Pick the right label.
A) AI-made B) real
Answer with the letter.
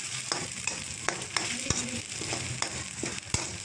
B